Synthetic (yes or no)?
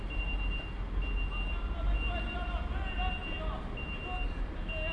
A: no